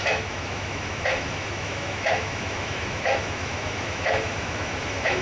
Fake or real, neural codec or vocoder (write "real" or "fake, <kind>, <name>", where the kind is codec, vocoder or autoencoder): fake, autoencoder, DAC-VAE